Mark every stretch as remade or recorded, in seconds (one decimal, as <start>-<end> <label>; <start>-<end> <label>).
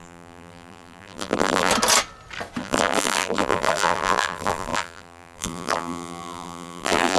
0.0-1.7 remade; 1.7-2.6 recorded; 2.6-7.2 remade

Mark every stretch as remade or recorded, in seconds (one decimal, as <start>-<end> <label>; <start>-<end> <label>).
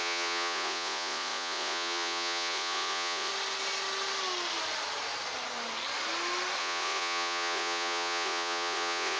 0.0-3.3 remade; 3.3-6.6 recorded; 6.6-9.2 remade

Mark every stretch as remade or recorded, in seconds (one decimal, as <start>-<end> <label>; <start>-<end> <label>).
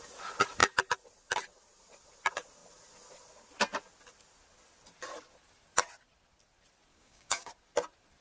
0.0-6.9 recorded; 6.9-7.5 remade; 7.5-8.2 recorded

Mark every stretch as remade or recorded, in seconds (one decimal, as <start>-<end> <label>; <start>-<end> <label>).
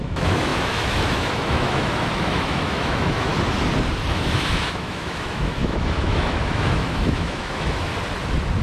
0.0-3.3 remade; 3.3-4.1 recorded; 4.1-7.9 remade; 7.9-8.6 recorded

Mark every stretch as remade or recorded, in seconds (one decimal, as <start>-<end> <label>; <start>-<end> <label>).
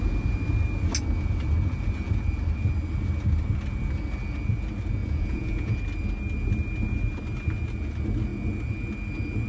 0.0-5.0 recorded; 5.0-5.7 remade; 5.7-9.5 recorded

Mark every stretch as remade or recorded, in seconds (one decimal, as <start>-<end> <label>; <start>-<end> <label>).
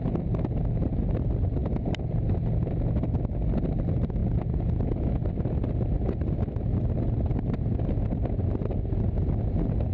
0.0-1.6 recorded; 1.6-2.4 remade; 2.4-9.9 recorded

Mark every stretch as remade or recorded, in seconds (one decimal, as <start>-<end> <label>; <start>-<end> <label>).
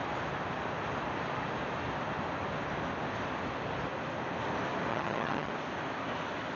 0.0-4.9 recorded; 4.9-5.5 remade; 5.5-6.6 recorded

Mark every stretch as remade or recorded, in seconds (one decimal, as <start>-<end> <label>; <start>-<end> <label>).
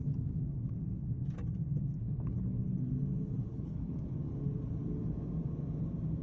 0.0-1.9 recorded; 1.9-2.8 remade; 2.8-3.5 recorded; 3.5-4.1 remade; 4.1-6.2 recorded